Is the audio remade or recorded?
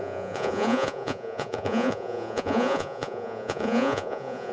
remade